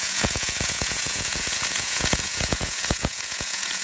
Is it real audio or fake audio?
fake